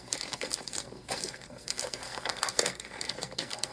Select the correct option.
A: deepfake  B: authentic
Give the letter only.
A